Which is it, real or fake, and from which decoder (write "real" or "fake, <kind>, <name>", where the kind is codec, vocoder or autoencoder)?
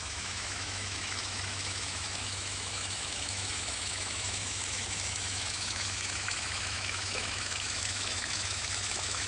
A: fake, autoencoder, DAC-VAE